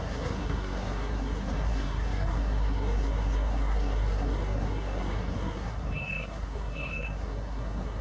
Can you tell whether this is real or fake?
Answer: fake